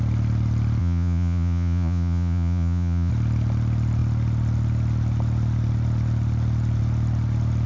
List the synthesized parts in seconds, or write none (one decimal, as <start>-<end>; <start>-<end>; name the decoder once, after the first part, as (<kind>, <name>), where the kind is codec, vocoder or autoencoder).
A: 0.8-3.1 (vocoder, Vocos)